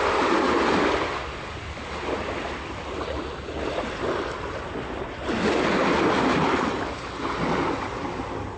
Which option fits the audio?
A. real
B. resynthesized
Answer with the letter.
A